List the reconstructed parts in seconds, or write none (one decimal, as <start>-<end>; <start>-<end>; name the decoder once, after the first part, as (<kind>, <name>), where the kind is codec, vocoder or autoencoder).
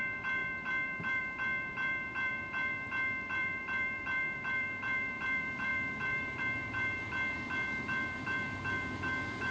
0.0-9.5 (vocoder, BigVGAN v2)